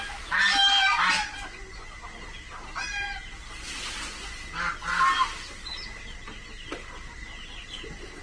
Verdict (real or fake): real